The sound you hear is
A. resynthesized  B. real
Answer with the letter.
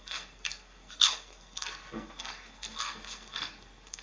A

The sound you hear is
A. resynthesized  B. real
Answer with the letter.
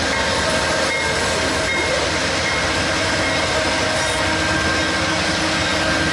B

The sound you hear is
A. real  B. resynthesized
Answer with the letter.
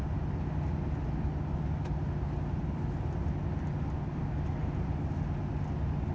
A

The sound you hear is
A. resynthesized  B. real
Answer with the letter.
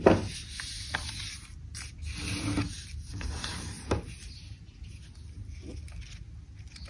B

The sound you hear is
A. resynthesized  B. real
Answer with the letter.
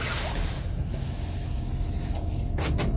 B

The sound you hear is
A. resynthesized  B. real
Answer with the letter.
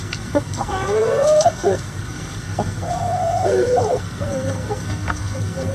A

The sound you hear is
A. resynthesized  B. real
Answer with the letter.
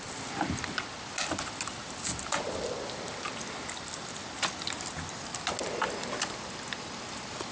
B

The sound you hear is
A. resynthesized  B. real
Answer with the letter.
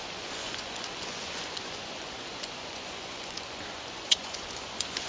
A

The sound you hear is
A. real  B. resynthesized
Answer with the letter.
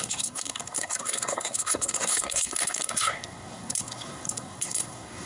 B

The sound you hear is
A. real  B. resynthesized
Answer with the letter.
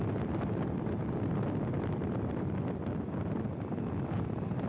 A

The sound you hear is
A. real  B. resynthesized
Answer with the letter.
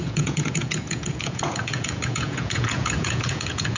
B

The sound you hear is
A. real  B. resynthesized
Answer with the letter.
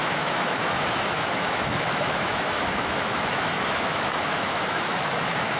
B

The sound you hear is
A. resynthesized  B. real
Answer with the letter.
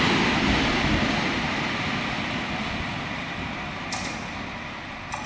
B